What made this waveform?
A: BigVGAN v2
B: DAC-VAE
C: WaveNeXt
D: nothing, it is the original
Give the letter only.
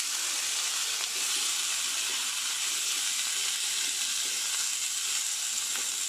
D